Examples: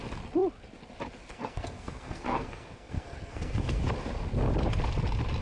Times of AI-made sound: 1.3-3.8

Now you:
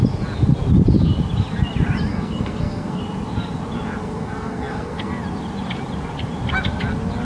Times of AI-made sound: 2.1-3.0; 4.0-5.1

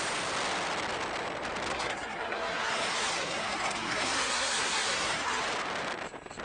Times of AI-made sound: 1.7-5.4

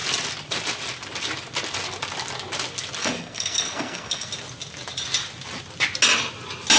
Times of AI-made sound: 3.0-4.3

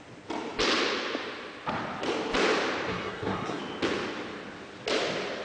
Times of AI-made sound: 2.9-3.6